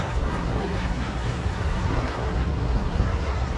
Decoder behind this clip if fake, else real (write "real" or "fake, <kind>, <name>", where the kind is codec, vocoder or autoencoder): fake, codec, SNAC